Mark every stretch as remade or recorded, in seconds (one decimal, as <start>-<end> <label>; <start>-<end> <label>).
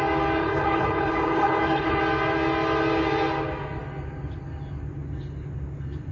0.0-0.4 recorded; 0.4-2.0 remade; 2.0-6.1 recorded